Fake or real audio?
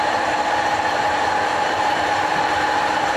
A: fake